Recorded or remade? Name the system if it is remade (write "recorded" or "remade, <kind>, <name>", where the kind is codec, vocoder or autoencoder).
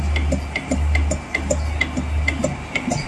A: recorded